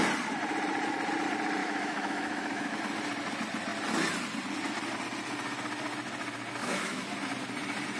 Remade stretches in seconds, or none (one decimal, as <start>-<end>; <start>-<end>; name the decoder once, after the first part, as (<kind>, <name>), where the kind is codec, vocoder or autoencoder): 1.6-2.8 (autoencoder, DAC-VAE); 6.6-7.1